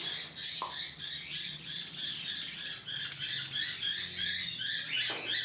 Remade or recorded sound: recorded